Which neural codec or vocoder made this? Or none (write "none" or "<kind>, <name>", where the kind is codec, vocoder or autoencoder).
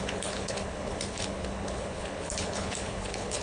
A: codec, HILCodec